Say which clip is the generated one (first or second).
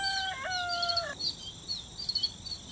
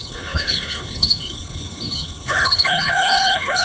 second